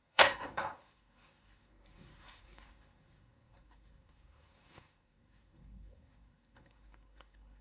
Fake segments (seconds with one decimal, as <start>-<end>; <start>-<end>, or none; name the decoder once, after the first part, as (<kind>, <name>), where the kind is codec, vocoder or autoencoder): 0.0-7.6 (codec, SNAC)